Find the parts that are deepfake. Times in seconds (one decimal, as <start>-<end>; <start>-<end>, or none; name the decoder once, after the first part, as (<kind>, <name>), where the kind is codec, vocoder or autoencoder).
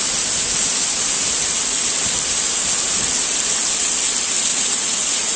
4.5-5.4 (vocoder, Vocos)